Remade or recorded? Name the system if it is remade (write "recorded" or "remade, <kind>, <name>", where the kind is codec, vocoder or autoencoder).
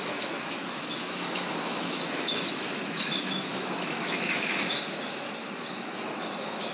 remade, autoencoder, DAC-VAE